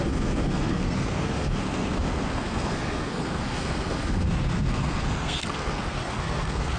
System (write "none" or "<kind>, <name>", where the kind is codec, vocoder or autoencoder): codec, SNAC